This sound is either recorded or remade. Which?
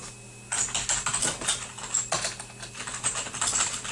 recorded